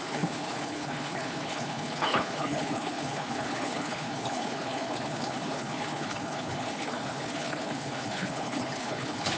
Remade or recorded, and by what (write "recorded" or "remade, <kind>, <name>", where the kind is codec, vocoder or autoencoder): remade, codec, HILCodec